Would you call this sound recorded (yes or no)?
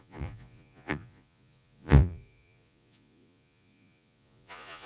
no